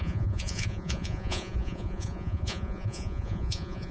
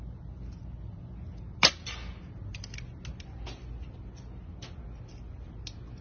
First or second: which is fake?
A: first